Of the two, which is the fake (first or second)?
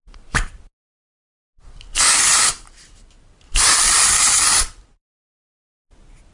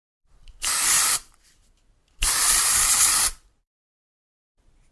second